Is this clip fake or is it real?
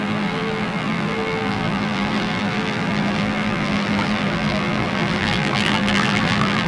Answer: fake